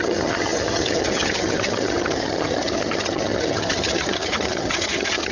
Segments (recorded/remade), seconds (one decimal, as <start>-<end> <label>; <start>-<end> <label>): 0.0-5.3 remade